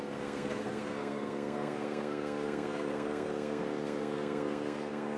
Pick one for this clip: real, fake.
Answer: fake